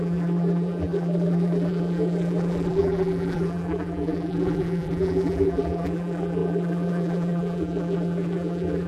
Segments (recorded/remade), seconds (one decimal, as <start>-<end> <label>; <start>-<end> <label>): 0.0-8.9 remade